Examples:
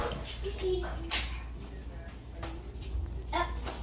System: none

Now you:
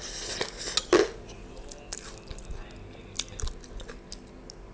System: none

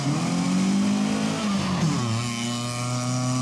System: none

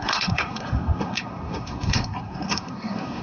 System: codec, SNAC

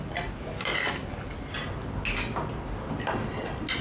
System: none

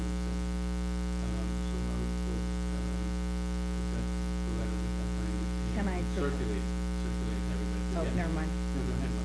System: none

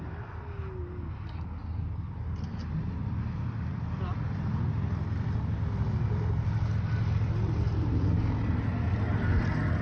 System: none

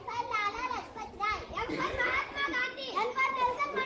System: none